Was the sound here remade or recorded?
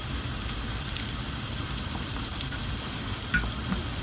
remade